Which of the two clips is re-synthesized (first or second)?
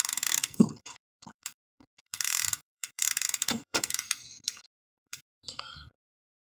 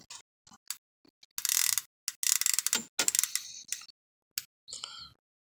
first